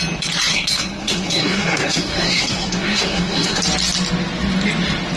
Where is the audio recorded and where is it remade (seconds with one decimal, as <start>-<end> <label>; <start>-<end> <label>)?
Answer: 0.0-0.5 recorded; 0.5-3.6 remade; 3.6-5.2 recorded